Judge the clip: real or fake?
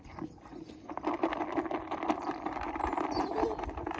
real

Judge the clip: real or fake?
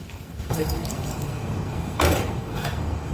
fake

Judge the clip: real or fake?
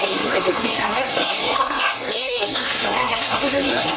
fake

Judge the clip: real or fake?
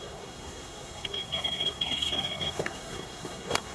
fake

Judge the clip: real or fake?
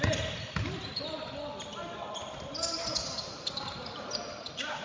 real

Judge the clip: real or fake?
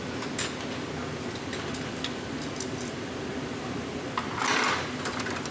real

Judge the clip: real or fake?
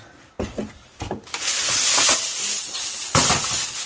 real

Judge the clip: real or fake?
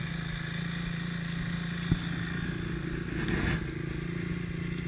real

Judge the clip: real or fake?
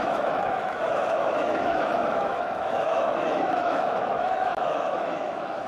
fake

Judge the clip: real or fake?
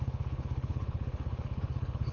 fake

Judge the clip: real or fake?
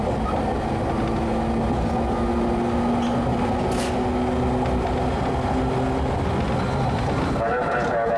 real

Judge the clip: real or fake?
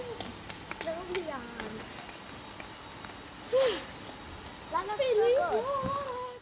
real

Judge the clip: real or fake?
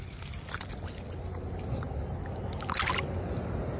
real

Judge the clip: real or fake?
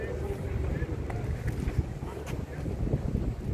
real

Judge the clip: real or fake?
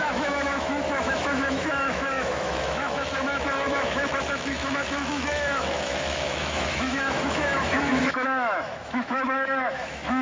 fake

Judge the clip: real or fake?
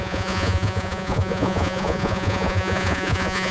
fake